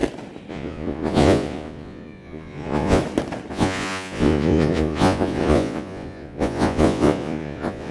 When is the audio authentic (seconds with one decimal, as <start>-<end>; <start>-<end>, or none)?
0.0-0.5; 3.0-3.5